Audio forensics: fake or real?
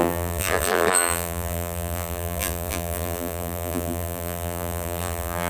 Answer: fake